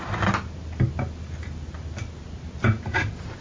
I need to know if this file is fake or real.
real